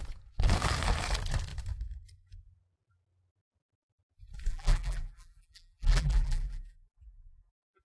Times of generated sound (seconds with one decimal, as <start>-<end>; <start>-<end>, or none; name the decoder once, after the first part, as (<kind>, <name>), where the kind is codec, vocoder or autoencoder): 4.5-7.8 (vocoder, BigVGAN v2)